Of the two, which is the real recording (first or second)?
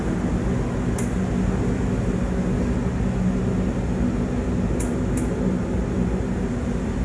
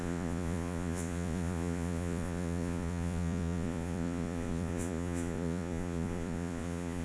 first